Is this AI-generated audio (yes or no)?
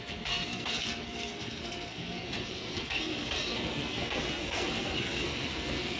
yes